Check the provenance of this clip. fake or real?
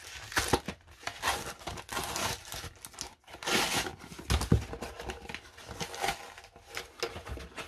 real